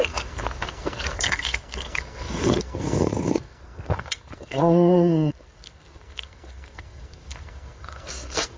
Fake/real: fake